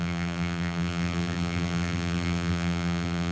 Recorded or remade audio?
remade